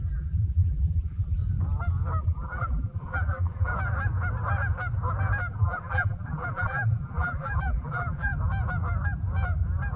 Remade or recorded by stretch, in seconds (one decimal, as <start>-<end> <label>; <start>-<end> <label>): 0.0-1.4 remade; 1.4-2.2 recorded; 2.2-3.7 remade; 3.7-5.5 recorded; 5.5-8.3 remade; 8.3-10.0 recorded